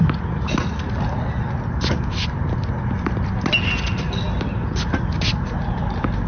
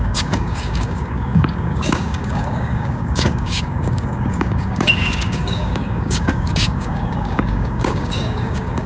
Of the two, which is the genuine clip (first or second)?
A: first